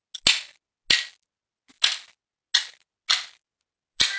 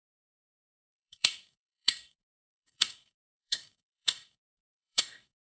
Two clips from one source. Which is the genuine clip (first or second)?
first